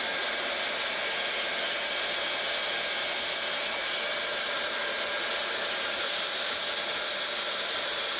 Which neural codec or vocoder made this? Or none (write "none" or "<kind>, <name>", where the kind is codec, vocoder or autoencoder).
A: none